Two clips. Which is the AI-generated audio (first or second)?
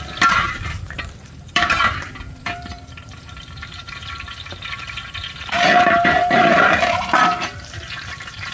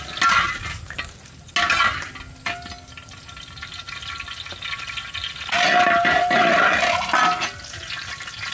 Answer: first